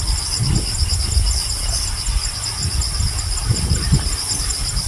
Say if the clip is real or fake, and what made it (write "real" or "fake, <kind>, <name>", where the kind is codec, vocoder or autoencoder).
real